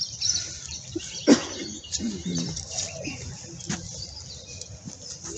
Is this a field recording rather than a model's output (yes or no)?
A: yes